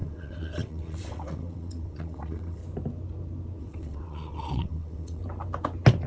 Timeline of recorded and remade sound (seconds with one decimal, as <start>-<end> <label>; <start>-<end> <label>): 0.0-2.6 remade; 2.6-3.6 recorded; 3.6-5.2 remade; 5.2-6.1 recorded